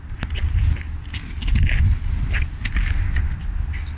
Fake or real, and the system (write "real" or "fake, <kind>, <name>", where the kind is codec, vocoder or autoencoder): real